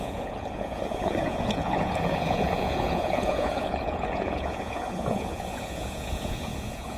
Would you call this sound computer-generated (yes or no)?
yes